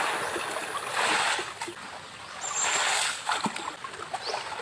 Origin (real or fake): real